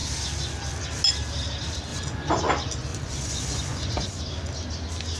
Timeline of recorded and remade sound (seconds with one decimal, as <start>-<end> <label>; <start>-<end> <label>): 0.0-1.9 recorded; 1.9-2.5 remade; 2.5-2.9 recorded; 2.9-4.2 remade; 4.2-5.2 recorded